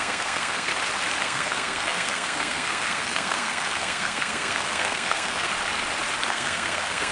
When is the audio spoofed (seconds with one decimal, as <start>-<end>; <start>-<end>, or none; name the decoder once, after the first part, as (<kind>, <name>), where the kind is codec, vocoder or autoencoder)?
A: 0.0-0.7 (codec, SNAC); 1.2-5.5; 6.3-7.1